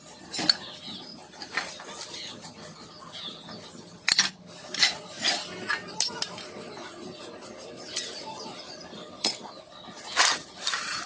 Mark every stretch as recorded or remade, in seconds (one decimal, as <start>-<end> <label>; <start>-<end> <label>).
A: 0.0-11.1 recorded